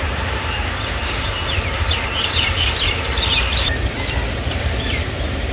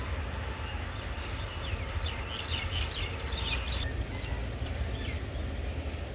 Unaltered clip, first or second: second